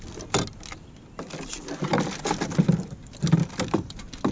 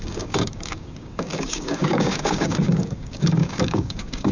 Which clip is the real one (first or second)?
first